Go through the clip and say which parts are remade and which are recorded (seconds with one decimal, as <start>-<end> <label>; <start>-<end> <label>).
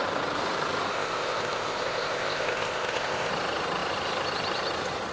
0.0-0.9 recorded; 0.9-3.3 remade; 3.3-5.1 recorded